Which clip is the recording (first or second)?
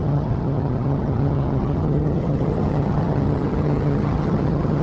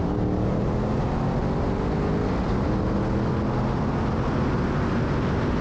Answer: second